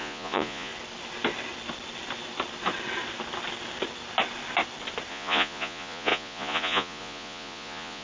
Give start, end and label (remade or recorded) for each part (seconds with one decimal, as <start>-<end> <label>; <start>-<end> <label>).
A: 0.0-0.7 remade; 0.7-5.1 recorded; 5.1-8.0 remade

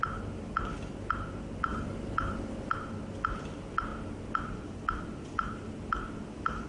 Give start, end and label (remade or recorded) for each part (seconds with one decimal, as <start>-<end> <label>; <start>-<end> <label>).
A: 0.0-1.7 recorded; 1.7-2.7 remade; 2.7-6.7 recorded

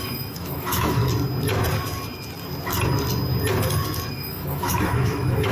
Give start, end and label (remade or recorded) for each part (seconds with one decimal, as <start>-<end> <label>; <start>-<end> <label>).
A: 0.0-1.0 remade; 1.0-4.1 recorded; 4.1-5.5 remade

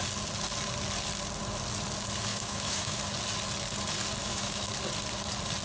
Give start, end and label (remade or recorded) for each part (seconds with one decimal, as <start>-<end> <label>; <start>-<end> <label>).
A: 0.0-2.3 recorded; 2.3-3.0 remade; 3.0-4.2 recorded; 4.2-4.7 remade; 4.7-5.6 recorded

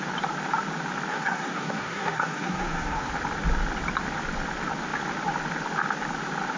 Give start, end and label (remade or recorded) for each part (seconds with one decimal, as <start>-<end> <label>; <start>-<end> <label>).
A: 0.0-1.1 recorded; 1.1-3.1 remade; 3.1-6.6 recorded

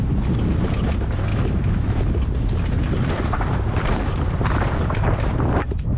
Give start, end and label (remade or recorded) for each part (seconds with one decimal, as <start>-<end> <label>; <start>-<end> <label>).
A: 0.0-1.3 recorded; 1.3-2.0 remade; 2.0-6.0 recorded